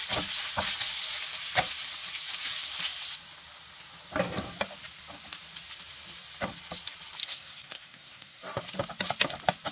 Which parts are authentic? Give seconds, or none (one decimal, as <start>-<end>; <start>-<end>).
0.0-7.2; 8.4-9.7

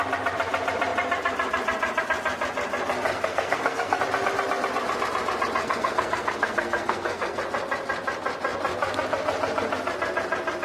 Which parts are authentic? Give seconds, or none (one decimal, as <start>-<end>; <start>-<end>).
0.0-3.1; 4.0-5.6; 7.4-10.6

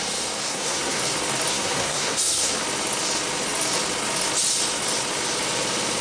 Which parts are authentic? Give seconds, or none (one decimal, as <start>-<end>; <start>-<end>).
0.0-0.5; 1.0-1.5; 2.5-6.0

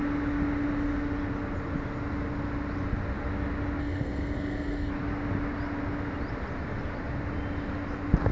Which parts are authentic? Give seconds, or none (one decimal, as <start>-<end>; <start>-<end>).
0.0-3.8; 4.9-8.3

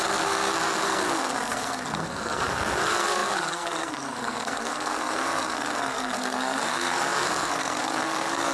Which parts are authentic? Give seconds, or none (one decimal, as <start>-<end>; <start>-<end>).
none

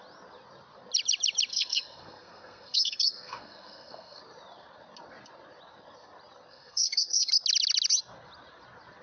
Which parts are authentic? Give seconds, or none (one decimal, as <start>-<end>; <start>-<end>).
0.0-1.5; 4.2-6.5; 7.3-9.0

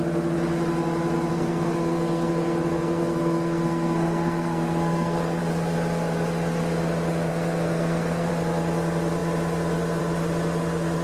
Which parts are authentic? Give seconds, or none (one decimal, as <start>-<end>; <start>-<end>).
0.0-1.3; 5.4-7.3; 8.3-11.0